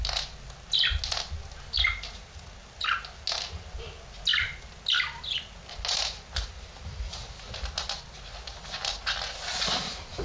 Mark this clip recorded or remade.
recorded